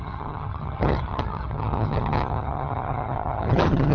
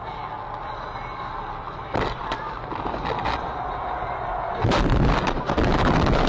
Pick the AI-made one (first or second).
first